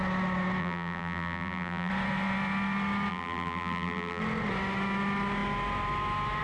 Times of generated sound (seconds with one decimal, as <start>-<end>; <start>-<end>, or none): 0.6-1.9; 3.1-4.2